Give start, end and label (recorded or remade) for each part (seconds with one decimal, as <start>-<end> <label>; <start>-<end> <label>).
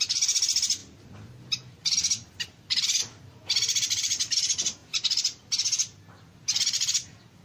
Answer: 0.0-7.4 recorded